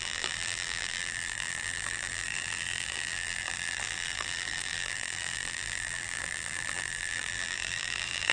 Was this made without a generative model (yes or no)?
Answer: no